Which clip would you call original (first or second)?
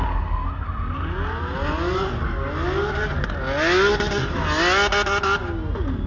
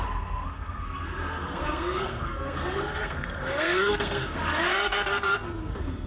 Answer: first